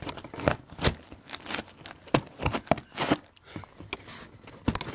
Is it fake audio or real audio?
real